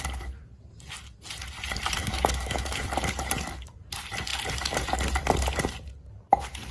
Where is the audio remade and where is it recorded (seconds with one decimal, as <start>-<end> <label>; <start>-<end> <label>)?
0.0-2.0 recorded; 2.0-2.8 remade; 2.8-6.7 recorded